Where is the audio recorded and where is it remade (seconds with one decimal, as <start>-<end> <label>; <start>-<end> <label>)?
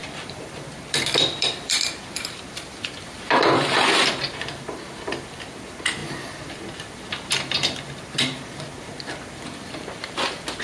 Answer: 0.0-10.6 remade